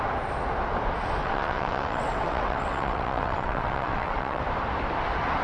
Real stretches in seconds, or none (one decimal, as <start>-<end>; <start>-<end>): 0.0-1.2; 4.4-5.4